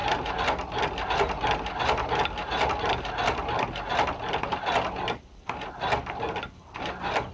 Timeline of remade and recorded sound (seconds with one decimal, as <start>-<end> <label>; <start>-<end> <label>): 0.0-7.3 recorded